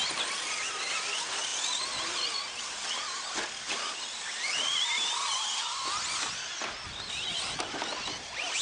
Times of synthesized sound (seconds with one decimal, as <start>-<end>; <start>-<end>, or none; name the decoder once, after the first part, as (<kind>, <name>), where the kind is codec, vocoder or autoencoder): none